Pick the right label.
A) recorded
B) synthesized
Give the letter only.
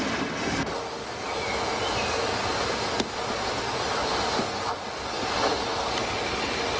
A